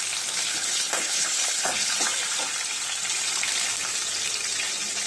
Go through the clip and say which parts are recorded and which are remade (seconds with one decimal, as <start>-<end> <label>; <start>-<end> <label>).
0.0-0.5 recorded; 0.5-1.9 remade; 1.9-5.1 recorded